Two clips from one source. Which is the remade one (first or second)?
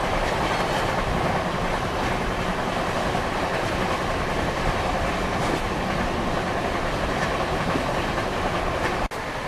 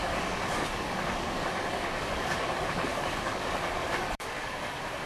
second